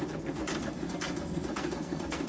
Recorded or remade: remade